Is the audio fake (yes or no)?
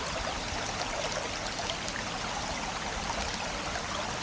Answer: no